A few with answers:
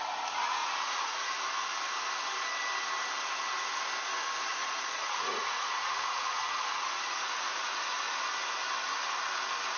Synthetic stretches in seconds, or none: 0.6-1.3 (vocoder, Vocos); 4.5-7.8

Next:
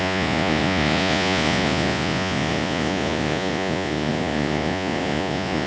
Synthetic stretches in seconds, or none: 0.0-5.7 (vocoder, Vocos)

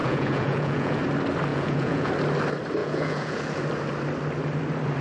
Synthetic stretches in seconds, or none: 0.0-1.0 (vocoder, Vocos); 1.5-2.1; 2.8-3.6

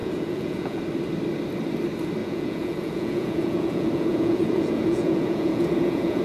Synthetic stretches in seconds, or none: 0.0-0.8 (vocoder, Vocos); 2.2-6.2

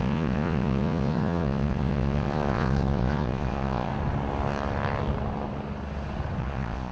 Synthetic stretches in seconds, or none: 0.0-3.9 (vocoder, Vocos); 6.4-6.9

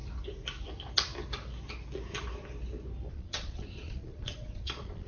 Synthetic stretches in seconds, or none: 3.1-5.1 (vocoder, Vocos)

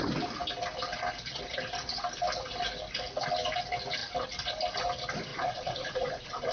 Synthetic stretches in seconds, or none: 5.3-6.5 (vocoder, Vocos)

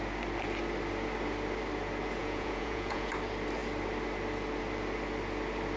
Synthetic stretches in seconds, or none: 2.2-3.1 (vocoder, Vocos)